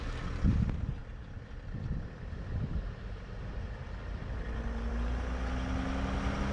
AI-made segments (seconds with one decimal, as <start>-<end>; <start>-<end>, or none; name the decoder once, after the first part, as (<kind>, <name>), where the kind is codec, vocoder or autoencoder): none